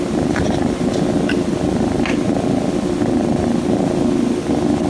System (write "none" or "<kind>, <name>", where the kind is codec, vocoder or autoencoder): none